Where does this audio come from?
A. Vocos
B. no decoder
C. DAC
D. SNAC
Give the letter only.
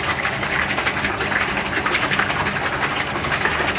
B